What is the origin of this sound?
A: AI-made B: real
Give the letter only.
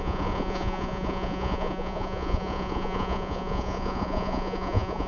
A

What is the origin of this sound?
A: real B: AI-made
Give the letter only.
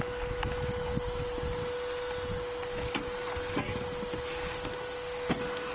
A